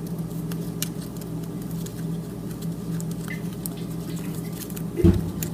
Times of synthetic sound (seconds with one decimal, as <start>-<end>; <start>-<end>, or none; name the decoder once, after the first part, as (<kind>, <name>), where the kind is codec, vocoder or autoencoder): none